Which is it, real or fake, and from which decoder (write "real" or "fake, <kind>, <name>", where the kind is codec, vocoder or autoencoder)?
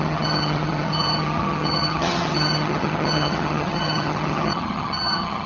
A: fake, vocoder, HiFi-GAN